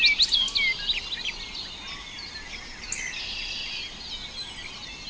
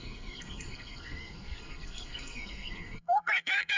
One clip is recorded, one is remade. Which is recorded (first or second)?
first